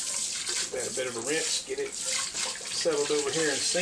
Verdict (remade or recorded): recorded